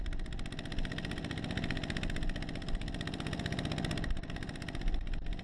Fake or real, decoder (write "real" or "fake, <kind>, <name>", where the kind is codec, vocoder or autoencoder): real